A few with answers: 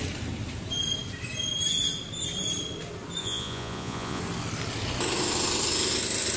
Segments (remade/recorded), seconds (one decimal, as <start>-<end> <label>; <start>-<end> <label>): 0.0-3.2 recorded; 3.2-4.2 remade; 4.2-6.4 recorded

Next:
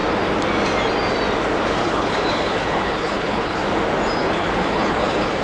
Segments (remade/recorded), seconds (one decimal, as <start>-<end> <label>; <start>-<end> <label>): 0.0-1.8 recorded; 1.8-3.6 remade; 3.6-4.2 recorded; 4.2-5.4 remade

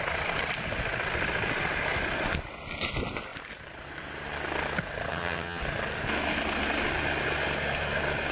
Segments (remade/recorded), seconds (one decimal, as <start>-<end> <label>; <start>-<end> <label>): 0.0-5.1 recorded; 5.1-5.6 remade; 5.6-8.3 recorded

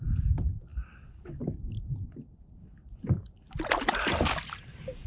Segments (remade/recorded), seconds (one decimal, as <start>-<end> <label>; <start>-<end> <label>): 0.0-5.1 recorded

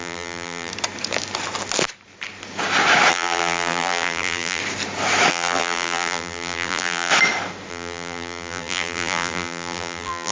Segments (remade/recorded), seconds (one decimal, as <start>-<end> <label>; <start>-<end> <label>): 0.0-0.7 remade; 0.7-3.1 recorded; 3.1-4.6 remade; 4.6-5.3 recorded; 5.3-7.1 remade; 7.1-7.7 recorded; 7.7-10.3 remade

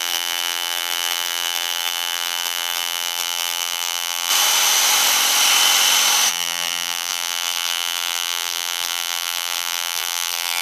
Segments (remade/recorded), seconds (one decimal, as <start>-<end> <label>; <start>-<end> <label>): 0.0-4.3 remade; 4.3-6.3 recorded; 6.3-10.6 remade

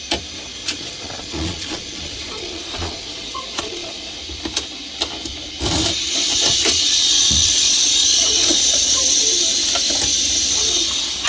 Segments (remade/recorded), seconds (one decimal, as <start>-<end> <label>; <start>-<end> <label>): 0.0-0.6 recorded; 0.6-4.2 remade; 4.2-6.3 recorded; 6.3-9.1 remade; 9.1-11.3 recorded

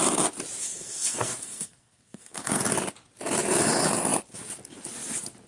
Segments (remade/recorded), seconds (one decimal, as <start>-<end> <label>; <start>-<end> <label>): 0.0-0.6 recorded; 0.6-2.6 remade; 2.6-5.5 recorded